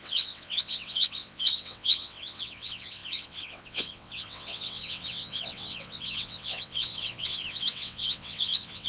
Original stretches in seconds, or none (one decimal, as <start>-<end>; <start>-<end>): none